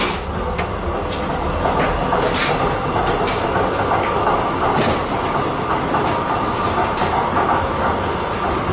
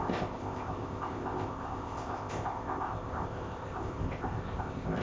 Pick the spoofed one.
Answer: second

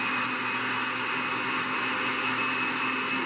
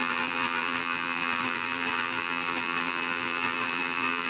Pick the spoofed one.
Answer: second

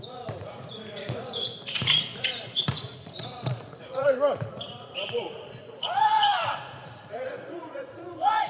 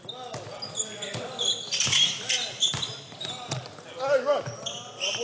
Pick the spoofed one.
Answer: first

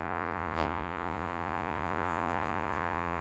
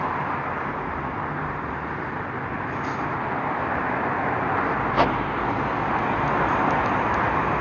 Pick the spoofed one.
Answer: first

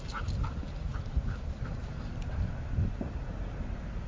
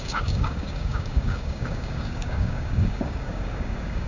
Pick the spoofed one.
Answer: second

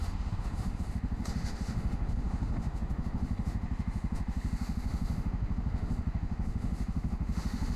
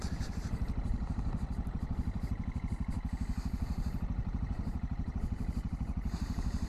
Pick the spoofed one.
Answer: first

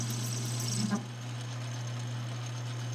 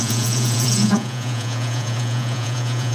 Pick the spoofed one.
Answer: second